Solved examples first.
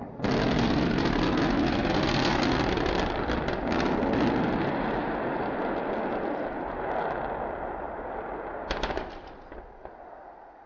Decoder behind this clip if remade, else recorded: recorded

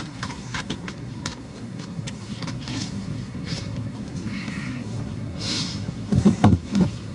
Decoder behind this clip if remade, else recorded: remade, codec, SNAC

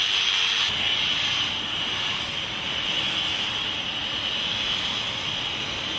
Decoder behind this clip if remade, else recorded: recorded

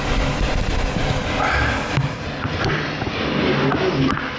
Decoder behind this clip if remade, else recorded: recorded